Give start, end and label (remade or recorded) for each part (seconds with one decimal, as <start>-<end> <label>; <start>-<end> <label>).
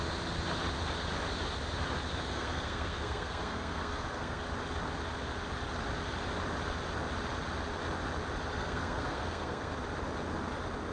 0.0-2.3 recorded; 2.3-4.4 remade; 4.4-8.5 recorded; 8.5-9.7 remade; 9.7-10.9 recorded